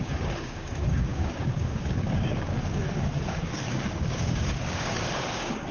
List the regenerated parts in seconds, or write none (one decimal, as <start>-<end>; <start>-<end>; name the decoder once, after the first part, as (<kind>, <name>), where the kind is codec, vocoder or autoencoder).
0.0-5.7 (codec, DAC)